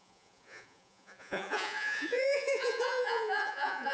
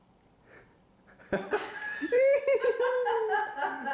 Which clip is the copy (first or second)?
first